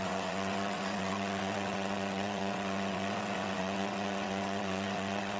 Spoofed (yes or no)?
yes